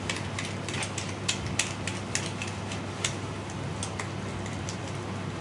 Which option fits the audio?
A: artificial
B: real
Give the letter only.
B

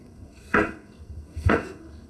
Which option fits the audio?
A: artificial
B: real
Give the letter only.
A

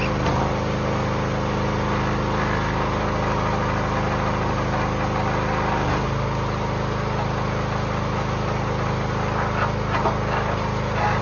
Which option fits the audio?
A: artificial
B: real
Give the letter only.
B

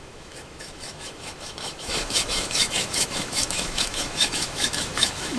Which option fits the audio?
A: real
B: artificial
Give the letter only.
B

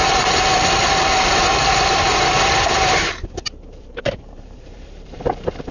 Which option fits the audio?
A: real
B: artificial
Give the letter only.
B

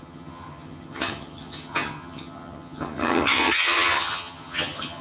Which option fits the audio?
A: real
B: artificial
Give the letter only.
B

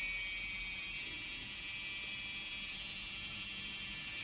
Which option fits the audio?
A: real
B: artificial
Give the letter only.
A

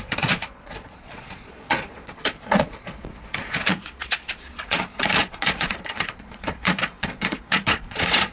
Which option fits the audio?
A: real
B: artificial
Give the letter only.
B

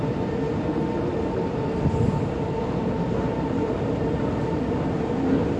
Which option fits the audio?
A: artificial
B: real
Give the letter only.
B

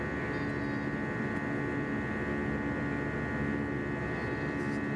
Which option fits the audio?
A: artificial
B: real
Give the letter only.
B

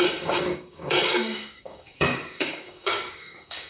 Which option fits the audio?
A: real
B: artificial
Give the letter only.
B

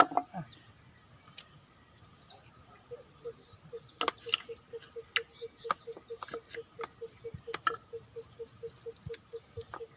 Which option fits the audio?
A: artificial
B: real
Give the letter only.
B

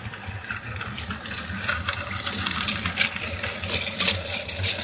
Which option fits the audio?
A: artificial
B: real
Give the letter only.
B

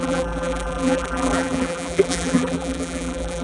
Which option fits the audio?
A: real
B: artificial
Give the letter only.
B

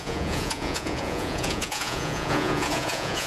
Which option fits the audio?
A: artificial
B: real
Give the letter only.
A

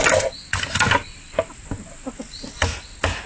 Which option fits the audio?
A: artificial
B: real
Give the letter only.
B